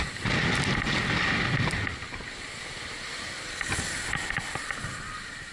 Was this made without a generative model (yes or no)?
yes